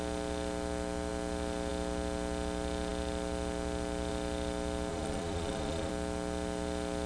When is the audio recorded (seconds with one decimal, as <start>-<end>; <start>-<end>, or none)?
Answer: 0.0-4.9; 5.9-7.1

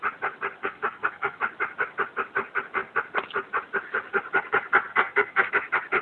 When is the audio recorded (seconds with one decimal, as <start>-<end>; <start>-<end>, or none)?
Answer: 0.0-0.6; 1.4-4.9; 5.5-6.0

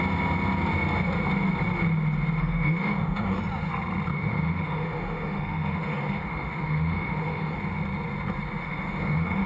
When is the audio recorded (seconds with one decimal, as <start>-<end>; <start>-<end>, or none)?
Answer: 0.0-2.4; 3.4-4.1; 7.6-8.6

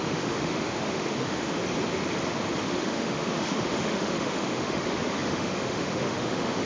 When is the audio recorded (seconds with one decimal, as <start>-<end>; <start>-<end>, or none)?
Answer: 1.6-2.6

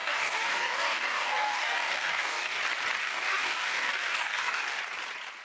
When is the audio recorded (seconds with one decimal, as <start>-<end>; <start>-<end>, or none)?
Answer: 2.6-3.0; 4.8-5.4